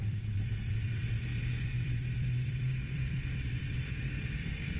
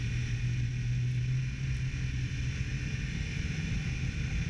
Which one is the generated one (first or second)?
first